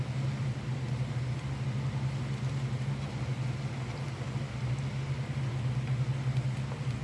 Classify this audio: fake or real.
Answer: real